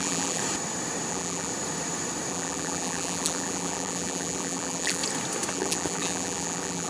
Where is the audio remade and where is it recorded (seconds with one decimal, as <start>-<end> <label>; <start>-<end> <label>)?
0.0-0.4 remade; 0.4-1.1 recorded; 1.1-1.5 remade; 1.5-2.3 recorded; 2.3-5.0 remade; 5.0-5.5 recorded; 5.5-6.9 remade